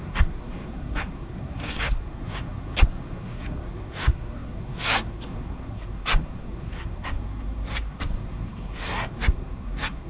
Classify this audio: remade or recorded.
remade